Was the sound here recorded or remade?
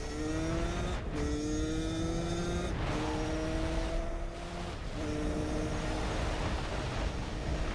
recorded